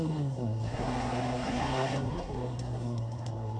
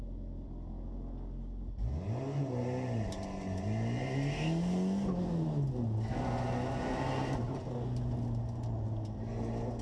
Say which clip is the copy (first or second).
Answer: first